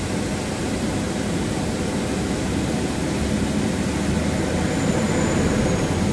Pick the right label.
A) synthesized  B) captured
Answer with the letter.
B